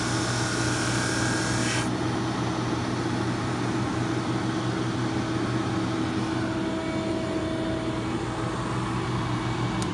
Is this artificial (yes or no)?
no